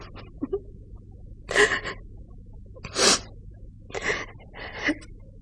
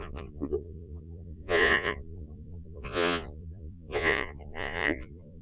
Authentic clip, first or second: first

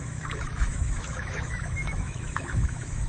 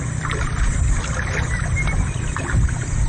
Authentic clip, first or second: second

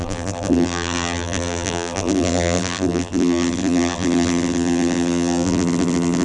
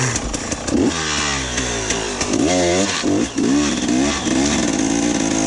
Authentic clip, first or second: second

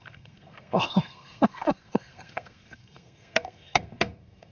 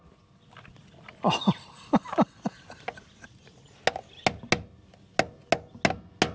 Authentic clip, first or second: second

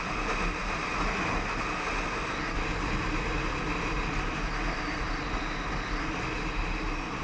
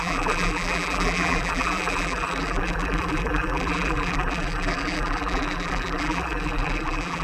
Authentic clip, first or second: first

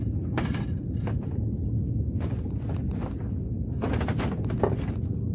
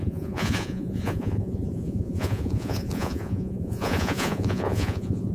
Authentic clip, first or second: first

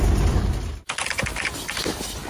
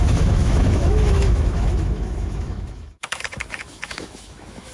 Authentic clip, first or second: first